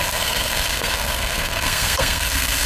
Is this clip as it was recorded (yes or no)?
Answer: no